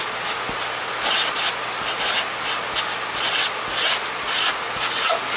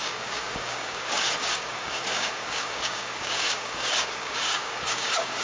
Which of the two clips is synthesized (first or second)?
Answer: second